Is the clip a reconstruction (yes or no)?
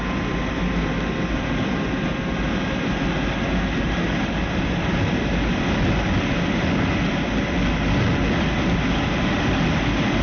no